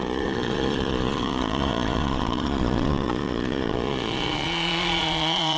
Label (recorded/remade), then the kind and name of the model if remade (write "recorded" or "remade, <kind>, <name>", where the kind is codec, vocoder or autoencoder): remade, vocoder, Vocos